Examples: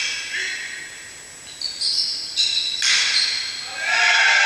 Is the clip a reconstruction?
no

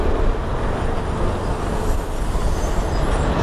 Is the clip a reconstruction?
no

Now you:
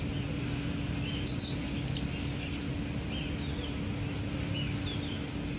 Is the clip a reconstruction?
no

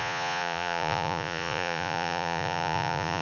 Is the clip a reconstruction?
yes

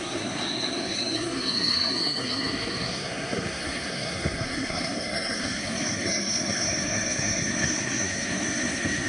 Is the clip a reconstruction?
yes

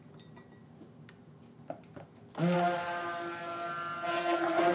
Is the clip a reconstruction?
no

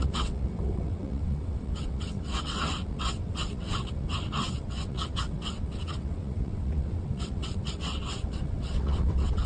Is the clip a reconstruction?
yes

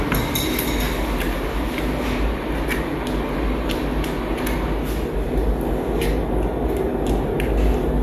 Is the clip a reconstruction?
no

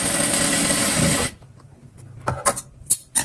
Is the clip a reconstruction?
no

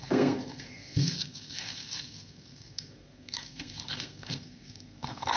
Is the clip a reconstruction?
yes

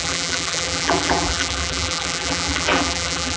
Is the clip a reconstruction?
yes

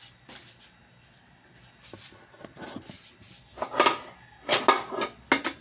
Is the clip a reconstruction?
no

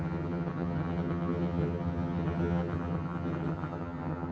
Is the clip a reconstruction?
yes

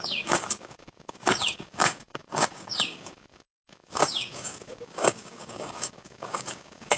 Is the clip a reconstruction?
yes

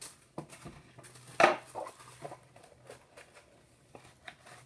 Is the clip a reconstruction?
no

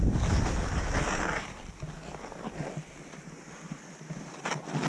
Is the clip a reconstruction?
no